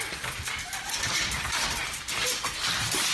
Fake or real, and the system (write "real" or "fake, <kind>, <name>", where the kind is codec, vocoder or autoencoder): fake, vocoder, BigVGAN v2